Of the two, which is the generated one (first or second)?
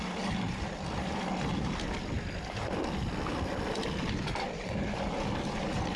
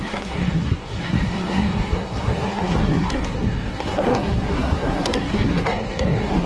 second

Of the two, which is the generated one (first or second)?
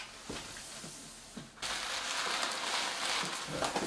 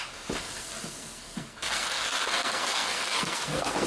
second